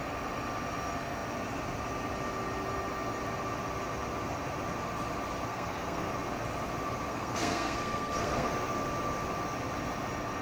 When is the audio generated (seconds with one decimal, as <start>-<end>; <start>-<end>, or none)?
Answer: 5.5-6.1; 7.1-8.5